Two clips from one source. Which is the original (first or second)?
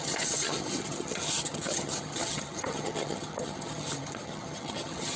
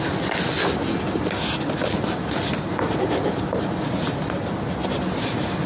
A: second